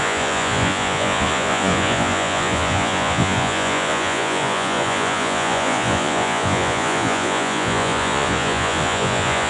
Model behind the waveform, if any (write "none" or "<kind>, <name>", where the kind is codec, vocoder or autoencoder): vocoder, Vocos